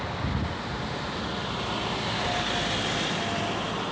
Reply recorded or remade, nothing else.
recorded